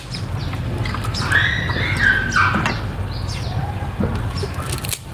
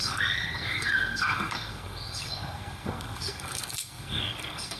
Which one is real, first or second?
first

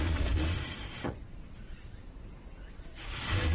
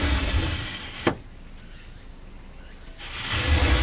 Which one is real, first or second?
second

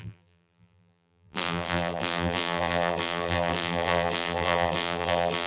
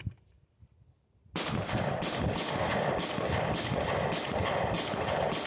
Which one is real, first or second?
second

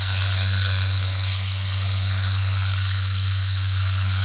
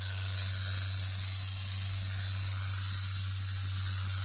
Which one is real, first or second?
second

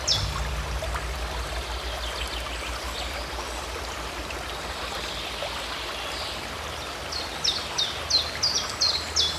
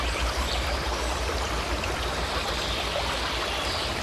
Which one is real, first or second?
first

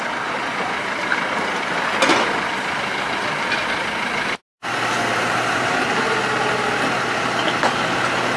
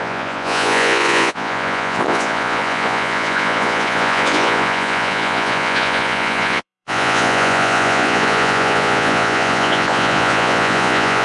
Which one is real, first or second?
first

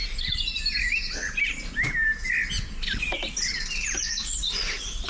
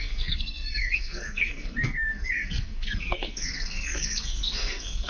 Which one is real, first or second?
first